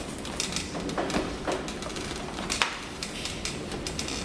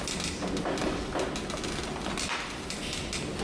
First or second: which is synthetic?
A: first